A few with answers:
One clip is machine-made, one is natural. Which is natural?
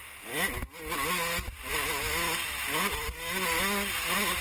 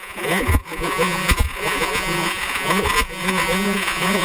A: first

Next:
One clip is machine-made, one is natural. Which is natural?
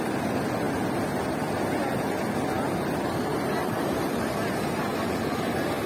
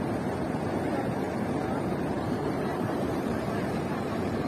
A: first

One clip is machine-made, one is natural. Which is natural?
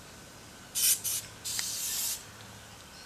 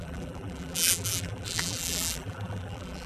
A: first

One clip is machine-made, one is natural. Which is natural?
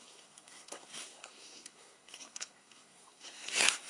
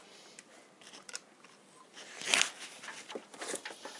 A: second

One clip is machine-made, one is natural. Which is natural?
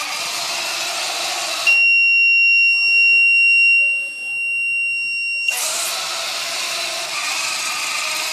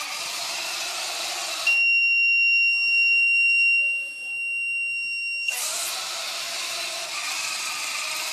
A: first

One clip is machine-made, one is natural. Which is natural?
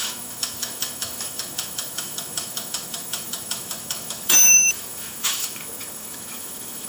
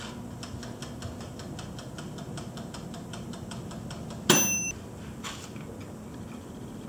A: second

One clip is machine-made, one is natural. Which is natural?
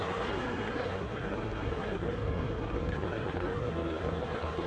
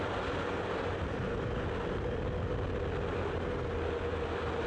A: second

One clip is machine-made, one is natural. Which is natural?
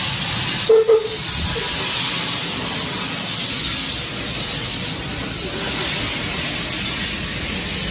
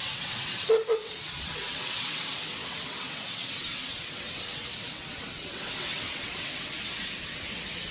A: first